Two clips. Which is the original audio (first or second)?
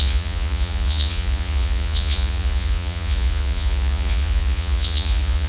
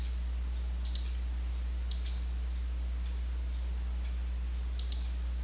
second